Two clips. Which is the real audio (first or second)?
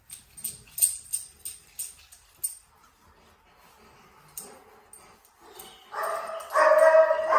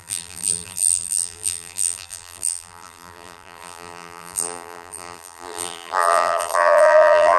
first